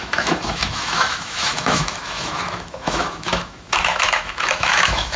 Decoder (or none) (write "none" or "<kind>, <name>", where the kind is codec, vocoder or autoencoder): autoencoder, DAC-VAE